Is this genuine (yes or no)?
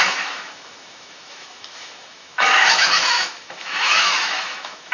no